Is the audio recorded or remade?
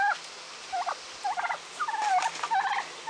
recorded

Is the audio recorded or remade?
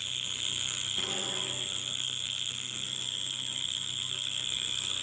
remade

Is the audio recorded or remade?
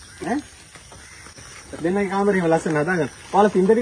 recorded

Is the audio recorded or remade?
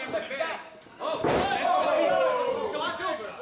recorded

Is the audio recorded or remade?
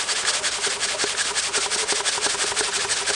recorded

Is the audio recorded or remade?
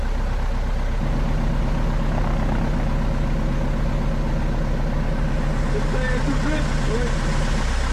recorded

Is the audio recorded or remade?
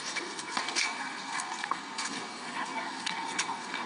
remade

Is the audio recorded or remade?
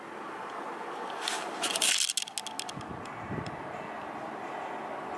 recorded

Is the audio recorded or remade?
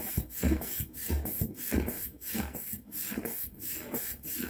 remade